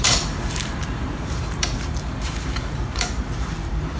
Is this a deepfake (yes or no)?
yes